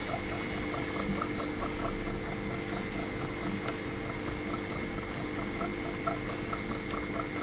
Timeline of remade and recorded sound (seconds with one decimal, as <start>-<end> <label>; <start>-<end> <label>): 0.0-0.7 remade; 0.7-3.0 recorded; 3.0-4.0 remade; 4.0-7.4 recorded